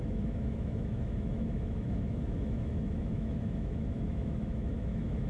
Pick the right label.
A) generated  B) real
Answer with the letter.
A